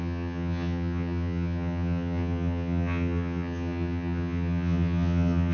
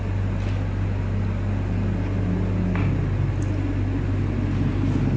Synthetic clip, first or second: first